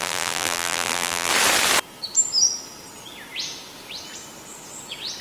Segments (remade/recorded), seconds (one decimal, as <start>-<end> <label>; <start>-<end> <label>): 0.0-1.3 remade; 1.3-5.2 recorded